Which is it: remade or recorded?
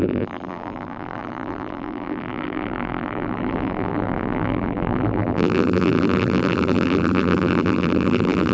remade